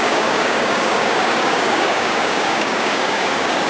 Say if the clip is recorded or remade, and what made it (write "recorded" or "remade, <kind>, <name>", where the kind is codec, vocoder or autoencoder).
remade, codec, DAC